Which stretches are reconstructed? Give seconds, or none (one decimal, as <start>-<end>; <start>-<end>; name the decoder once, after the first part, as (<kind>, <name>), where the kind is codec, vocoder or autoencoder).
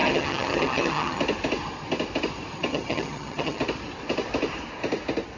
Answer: 0.0-1.2 (vocoder, HiFi-GAN); 2.7-3.6